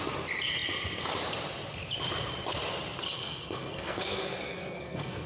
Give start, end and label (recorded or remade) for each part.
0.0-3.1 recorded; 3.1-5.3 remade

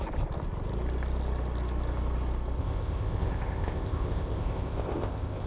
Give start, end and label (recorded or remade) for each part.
0.0-2.6 recorded; 2.6-5.5 remade

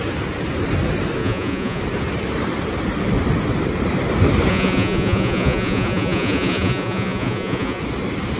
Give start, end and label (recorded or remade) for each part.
0.0-1.2 recorded; 1.2-1.8 remade; 1.8-4.5 recorded; 4.5-7.8 remade; 7.8-8.4 recorded

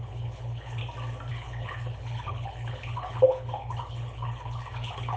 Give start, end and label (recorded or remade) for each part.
0.0-0.8 remade; 0.8-1.3 recorded; 1.3-5.2 remade

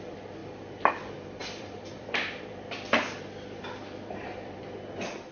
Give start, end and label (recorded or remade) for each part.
0.0-1.4 recorded; 1.4-4.6 remade; 4.6-5.3 recorded

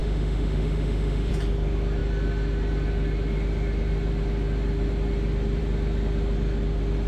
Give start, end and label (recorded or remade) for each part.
0.0-1.3 remade; 1.3-7.1 recorded